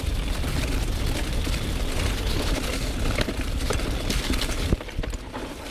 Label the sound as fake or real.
real